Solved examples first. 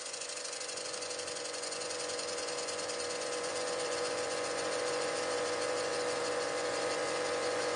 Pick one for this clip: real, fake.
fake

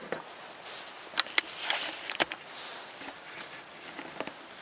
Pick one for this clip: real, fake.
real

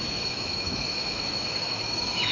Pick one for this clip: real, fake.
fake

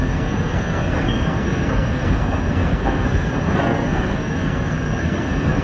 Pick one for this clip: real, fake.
fake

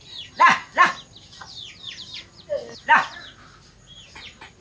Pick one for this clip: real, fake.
real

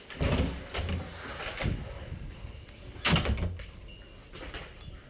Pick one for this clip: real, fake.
real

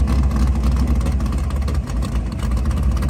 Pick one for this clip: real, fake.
real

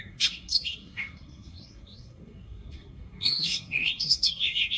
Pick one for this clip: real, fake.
fake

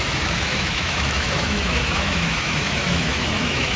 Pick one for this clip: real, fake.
fake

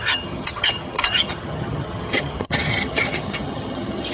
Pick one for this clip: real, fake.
fake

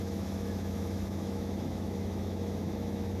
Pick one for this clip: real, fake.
fake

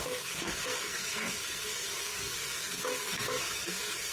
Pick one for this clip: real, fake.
fake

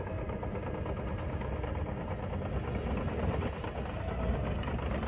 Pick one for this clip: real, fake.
real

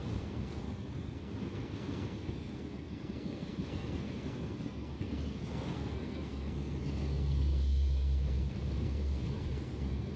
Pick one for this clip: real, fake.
fake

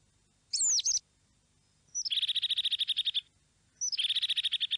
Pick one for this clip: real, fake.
real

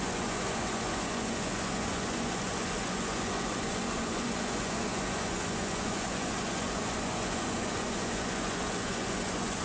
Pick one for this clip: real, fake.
fake